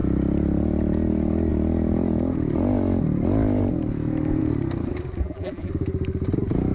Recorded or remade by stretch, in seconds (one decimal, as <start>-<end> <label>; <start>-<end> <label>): 0.0-5.2 recorded; 5.2-5.7 remade; 5.7-6.7 recorded